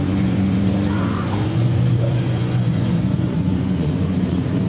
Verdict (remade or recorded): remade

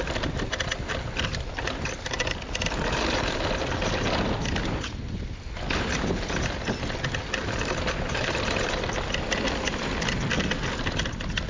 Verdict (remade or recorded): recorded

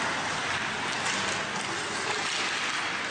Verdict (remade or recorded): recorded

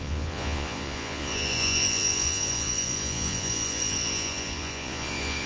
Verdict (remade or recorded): remade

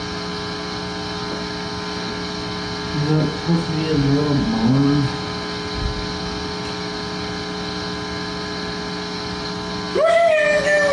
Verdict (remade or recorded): recorded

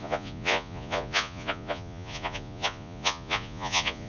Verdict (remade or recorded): remade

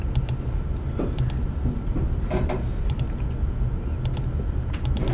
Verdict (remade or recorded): recorded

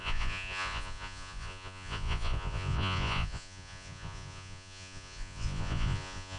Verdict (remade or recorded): remade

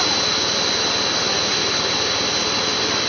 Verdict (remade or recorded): recorded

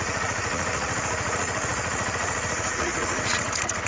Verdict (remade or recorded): remade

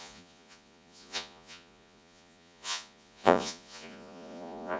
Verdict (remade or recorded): remade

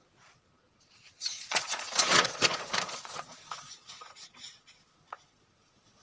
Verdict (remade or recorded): remade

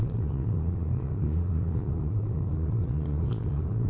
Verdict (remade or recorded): remade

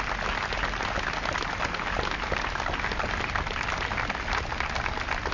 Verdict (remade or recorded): recorded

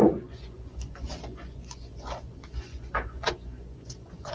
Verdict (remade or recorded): remade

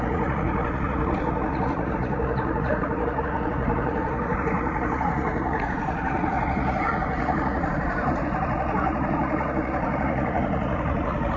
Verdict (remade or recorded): remade